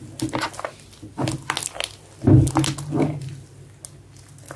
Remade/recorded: recorded